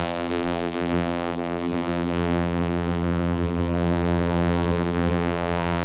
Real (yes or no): no